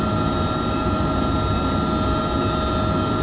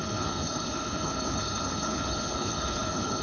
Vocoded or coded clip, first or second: second